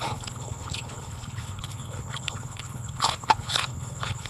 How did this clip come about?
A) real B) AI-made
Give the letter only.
B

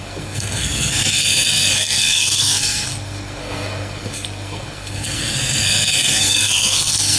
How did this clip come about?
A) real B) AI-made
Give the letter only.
B